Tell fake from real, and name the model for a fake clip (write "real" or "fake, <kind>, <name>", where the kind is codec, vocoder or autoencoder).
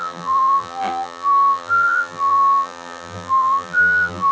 fake, vocoder, BigVGAN v2